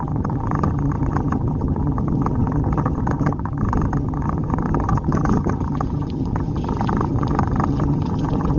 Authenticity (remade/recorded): remade